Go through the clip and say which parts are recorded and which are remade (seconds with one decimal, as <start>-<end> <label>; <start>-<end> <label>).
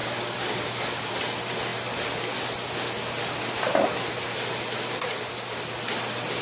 0.0-1.1 remade; 1.1-6.4 recorded